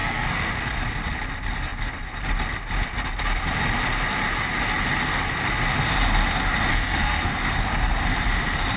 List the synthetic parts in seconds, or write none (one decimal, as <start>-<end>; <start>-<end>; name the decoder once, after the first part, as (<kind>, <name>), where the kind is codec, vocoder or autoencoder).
0.0-0.5 (codec, SNAC); 6.7-7.3